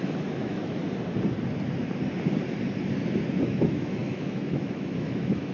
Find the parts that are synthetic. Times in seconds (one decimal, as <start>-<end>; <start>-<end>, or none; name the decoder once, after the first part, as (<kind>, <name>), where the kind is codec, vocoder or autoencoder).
0.0-0.8 (autoencoder, DAC-VAE); 3.4-5.5